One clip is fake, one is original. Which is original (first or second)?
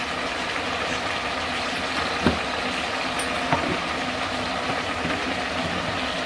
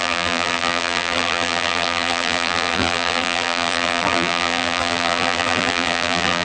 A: first